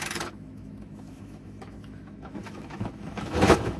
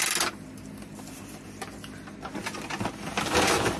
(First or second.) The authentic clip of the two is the second